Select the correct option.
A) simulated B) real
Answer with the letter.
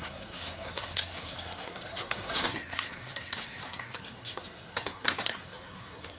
A